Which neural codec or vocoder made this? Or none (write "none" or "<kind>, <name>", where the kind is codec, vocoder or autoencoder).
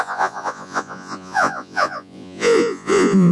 vocoder, Vocos